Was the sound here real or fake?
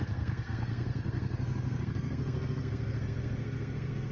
fake